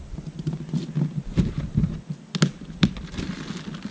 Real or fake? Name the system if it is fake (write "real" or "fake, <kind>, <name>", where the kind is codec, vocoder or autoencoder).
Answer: real